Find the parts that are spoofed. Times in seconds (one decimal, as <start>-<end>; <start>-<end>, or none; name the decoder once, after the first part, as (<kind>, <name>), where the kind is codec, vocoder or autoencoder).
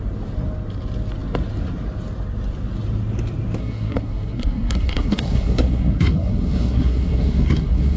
3.6-8.0 (codec, SNAC)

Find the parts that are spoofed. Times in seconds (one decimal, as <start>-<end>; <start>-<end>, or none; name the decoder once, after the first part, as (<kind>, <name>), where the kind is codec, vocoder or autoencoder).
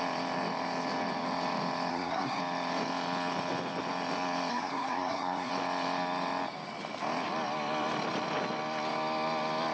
1.9-2.4 (codec, SNAC); 4.5-5.5